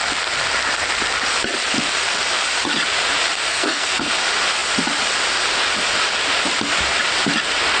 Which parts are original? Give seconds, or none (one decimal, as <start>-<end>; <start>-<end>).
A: 0.0-3.5; 4.1-7.8